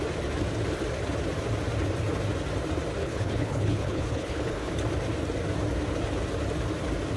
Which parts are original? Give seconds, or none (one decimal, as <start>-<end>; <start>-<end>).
0.0-3.0; 4.7-7.2